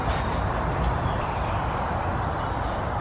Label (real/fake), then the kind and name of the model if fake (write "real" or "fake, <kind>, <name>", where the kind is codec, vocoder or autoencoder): real